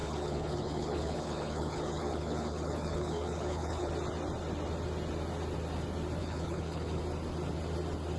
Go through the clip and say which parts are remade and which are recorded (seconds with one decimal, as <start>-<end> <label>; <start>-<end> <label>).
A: 0.0-3.9 remade; 3.9-6.2 recorded; 6.2-7.0 remade; 7.0-8.2 recorded